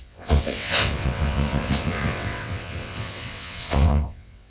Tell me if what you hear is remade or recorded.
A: remade